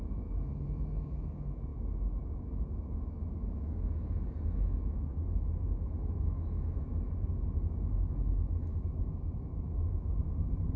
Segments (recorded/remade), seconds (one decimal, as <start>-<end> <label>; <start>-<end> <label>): 0.0-6.9 remade; 6.9-7.8 recorded; 7.8-10.8 remade